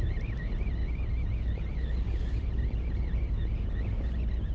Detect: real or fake real